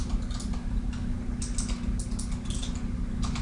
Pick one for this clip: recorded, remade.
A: recorded